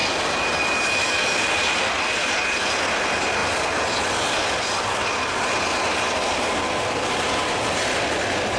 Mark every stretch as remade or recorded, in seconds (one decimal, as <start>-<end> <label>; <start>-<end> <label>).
0.0-8.6 recorded